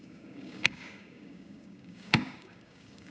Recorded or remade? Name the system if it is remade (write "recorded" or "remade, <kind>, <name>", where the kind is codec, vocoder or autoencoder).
remade, codec, DAC